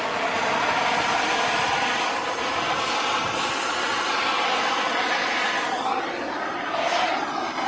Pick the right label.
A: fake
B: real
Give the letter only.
B